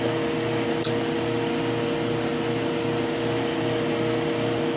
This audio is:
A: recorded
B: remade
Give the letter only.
A